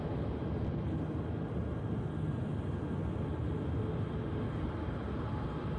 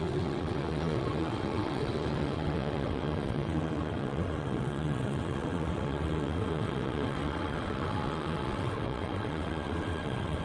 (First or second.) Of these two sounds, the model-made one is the second